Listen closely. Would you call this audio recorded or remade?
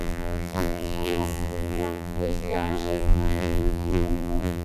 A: remade